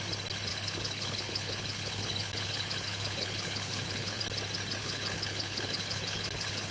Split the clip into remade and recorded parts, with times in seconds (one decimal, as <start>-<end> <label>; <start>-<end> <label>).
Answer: 0.0-0.5 recorded; 0.5-4.2 remade; 4.2-4.8 recorded; 4.8-6.7 remade